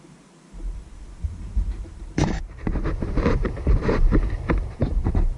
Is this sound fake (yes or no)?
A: yes